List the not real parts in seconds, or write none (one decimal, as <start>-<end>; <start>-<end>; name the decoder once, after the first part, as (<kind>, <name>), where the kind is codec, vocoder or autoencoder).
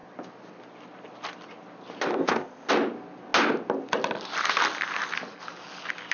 2.2-2.7 (codec, ZipCodec)